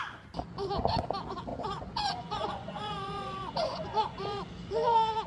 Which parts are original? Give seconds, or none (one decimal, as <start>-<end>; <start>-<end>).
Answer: 0.0-1.5; 4.4-5.3